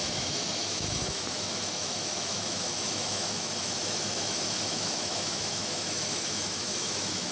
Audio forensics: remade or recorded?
remade